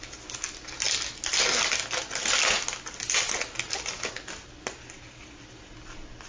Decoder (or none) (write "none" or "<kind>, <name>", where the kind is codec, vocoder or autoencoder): none